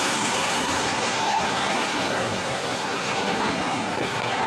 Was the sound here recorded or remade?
remade